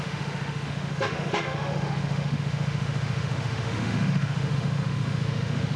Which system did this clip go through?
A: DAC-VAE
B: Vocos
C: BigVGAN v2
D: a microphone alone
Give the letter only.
A